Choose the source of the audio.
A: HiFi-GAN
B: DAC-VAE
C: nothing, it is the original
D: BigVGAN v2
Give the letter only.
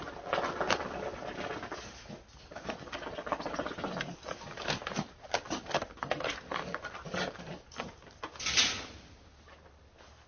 C